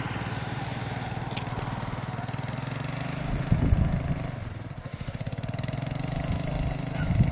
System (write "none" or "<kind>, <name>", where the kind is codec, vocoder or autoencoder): none